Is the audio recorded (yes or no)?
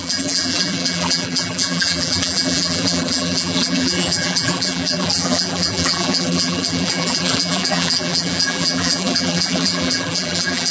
no